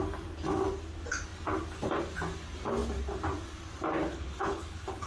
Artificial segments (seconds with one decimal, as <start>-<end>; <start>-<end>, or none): 4.1-5.1